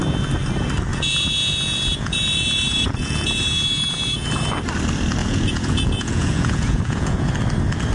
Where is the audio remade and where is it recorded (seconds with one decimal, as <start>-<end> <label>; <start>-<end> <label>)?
0.0-0.9 recorded; 0.9-4.3 remade; 4.3-5.2 recorded; 5.2-7.3 remade; 7.3-7.9 recorded

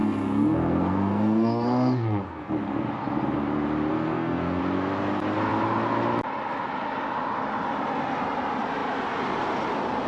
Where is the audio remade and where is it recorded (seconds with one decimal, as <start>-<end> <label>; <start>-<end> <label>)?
0.0-2.5 remade; 2.5-3.9 recorded; 3.9-4.6 remade; 4.6-10.1 recorded

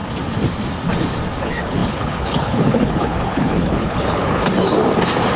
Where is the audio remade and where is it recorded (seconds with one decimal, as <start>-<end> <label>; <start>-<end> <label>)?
0.0-1.4 recorded; 1.4-4.4 remade; 4.4-5.4 recorded

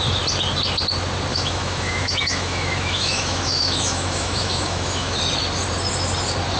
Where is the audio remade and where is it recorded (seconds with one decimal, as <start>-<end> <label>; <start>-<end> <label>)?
0.0-1.3 recorded; 1.3-5.2 remade; 5.2-6.6 recorded

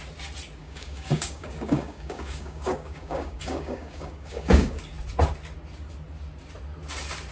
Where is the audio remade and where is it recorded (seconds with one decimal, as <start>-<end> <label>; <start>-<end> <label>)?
0.0-0.6 recorded; 0.6-4.8 remade; 4.8-7.3 recorded

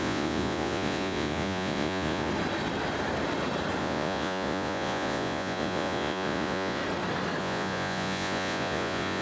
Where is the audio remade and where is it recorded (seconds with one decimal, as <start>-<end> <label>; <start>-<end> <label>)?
0.0-2.3 remade; 2.3-3.8 recorded; 3.8-6.8 remade; 6.8-7.4 recorded; 7.4-9.2 remade

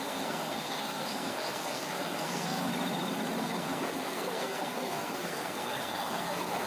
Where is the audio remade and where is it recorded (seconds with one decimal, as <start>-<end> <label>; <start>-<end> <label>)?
0.0-2.7 remade; 2.7-3.4 recorded; 3.4-6.7 remade

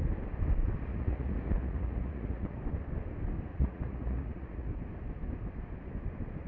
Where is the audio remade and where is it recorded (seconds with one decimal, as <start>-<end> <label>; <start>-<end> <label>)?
0.0-0.9 recorded; 0.9-2.6 remade; 2.6-3.5 recorded; 3.5-4.7 remade; 4.7-6.5 recorded